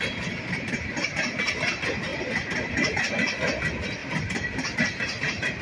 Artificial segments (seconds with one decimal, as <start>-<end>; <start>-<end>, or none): 4.0-5.6